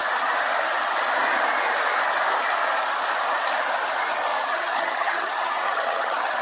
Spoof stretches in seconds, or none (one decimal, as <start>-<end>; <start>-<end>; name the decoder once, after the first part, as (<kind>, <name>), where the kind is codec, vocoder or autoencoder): 4.4-6.4 (vocoder, HiFi-GAN)